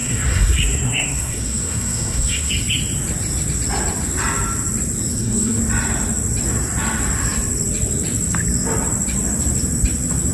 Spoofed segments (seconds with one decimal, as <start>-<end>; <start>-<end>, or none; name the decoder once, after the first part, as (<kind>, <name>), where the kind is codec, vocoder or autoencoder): 0.0-2.5 (codec, SNAC); 5.1-5.6